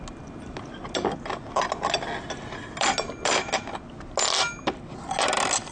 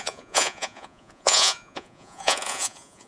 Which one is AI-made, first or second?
second